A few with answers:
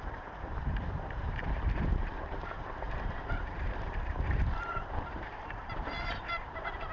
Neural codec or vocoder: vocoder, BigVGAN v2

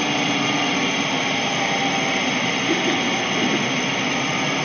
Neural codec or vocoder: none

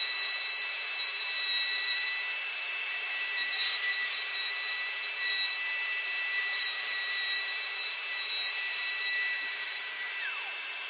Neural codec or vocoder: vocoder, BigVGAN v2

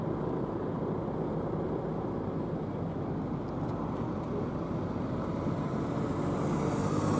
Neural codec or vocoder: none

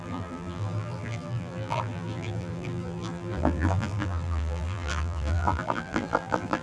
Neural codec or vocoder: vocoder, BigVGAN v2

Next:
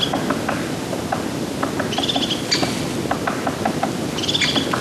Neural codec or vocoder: none